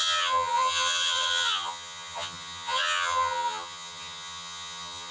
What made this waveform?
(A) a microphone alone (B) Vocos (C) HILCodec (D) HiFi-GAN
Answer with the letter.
D